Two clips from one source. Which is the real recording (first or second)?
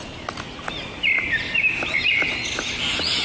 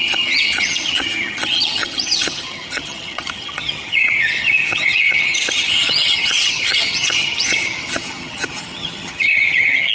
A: first